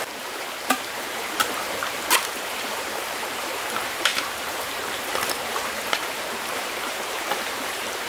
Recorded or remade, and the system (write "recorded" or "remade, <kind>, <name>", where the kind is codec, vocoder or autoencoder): remade, vocoder, BigVGAN v2